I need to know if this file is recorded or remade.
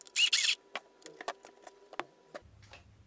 recorded